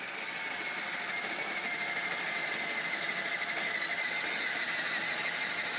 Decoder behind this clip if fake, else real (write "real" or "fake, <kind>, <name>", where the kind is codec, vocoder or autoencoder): real